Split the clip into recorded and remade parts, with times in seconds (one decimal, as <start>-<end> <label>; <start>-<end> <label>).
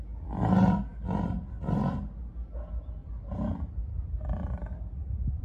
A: 0.0-5.4 recorded